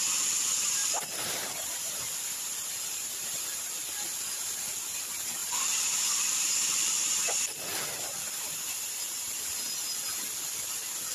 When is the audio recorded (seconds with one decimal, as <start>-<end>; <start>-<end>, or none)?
0.0-0.8; 3.6-5.4; 7.3-7.7; 9.4-11.1